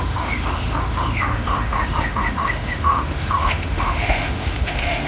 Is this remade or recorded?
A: remade